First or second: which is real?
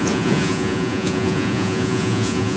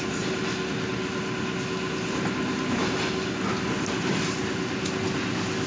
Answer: second